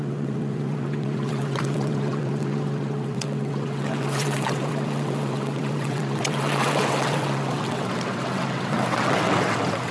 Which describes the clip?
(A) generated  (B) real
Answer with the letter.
A